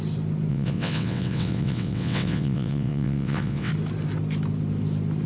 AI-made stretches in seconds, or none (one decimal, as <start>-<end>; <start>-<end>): 0.5-3.7